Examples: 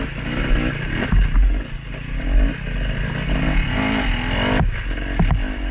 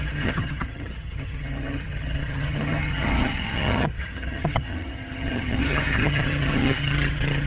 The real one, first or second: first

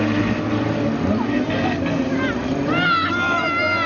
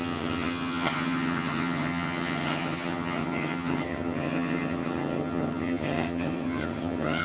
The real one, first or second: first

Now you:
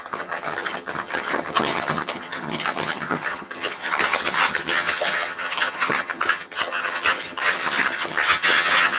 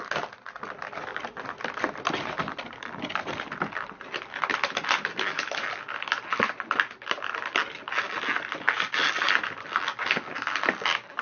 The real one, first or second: second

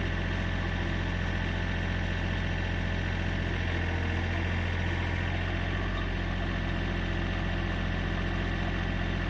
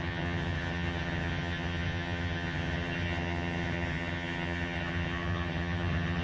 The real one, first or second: first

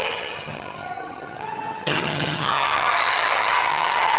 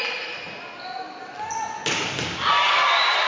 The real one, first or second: second